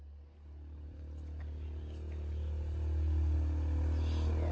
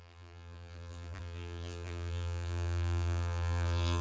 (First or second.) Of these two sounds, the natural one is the first